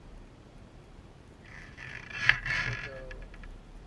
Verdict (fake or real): fake